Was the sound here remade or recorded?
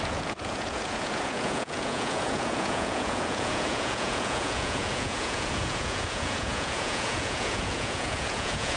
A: remade